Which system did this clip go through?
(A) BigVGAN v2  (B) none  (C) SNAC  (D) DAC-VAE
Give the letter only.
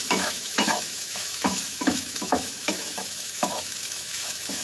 D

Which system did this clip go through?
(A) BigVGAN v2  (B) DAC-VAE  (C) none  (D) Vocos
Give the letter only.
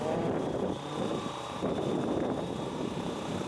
A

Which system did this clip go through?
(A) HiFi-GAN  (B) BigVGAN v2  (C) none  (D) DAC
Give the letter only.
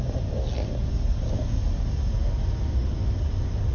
C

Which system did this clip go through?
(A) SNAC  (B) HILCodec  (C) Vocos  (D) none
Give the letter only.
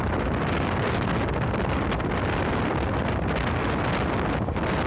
D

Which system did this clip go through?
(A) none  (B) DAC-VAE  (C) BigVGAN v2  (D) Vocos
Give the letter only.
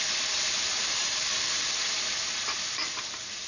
C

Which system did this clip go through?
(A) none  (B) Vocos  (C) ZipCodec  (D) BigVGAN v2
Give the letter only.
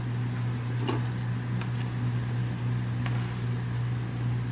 A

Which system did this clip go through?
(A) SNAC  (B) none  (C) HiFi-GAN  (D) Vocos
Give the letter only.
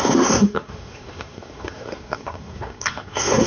A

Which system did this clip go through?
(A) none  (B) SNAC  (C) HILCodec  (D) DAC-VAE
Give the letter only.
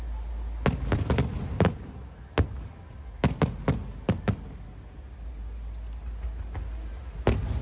A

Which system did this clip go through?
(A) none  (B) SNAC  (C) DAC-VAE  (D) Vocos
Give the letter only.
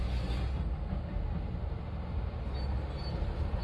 A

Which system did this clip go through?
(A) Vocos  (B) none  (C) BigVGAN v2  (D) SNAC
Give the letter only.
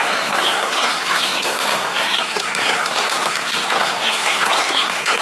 D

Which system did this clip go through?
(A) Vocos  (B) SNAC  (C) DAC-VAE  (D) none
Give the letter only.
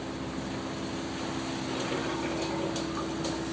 D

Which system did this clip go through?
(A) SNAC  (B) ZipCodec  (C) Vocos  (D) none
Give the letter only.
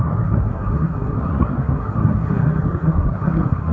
A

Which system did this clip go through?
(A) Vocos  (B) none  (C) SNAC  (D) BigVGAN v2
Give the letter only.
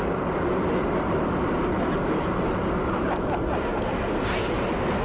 B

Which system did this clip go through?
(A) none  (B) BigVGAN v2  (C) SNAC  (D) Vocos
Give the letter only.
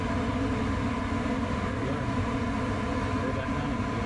A